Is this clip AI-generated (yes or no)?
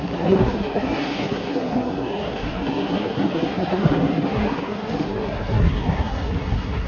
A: yes